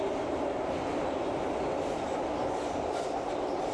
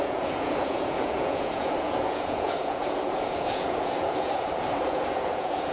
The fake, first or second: second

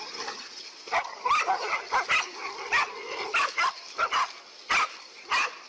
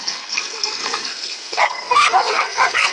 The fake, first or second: second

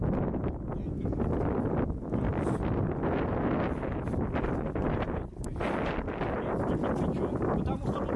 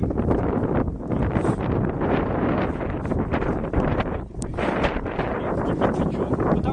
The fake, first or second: second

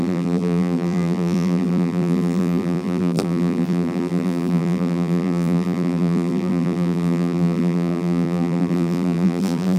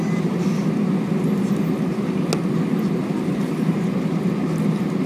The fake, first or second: first